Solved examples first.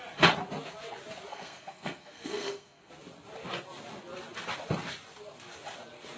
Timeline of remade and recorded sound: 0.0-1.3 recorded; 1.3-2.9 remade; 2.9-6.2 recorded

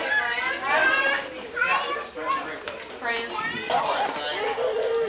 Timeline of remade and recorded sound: 0.0-5.1 recorded